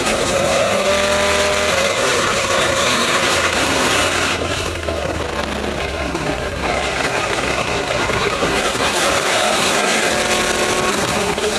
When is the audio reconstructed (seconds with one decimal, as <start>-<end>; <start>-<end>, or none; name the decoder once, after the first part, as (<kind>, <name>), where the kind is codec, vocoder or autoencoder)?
0.0-0.9 (codec, SNAC); 1.7-5.2; 5.8-10.1; 10.9-11.6